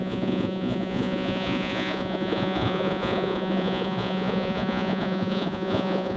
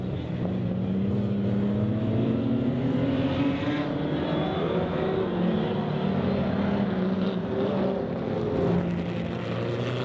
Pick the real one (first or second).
second